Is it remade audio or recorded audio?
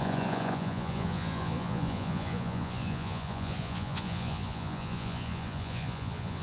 remade